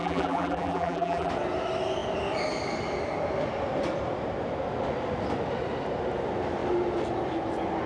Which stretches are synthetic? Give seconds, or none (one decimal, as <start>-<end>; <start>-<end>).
0.0-1.3